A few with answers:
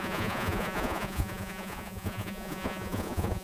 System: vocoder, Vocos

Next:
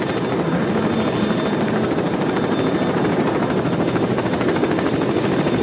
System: none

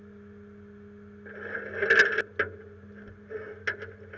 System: none